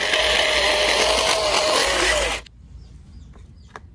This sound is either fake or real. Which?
real